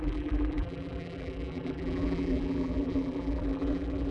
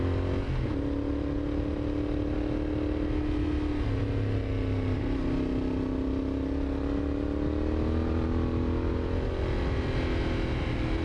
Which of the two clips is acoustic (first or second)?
second